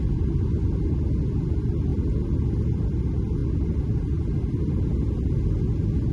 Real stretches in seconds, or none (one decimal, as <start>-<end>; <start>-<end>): 0.0-6.1